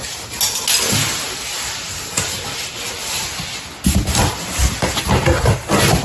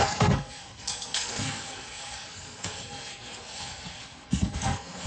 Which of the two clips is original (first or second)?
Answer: first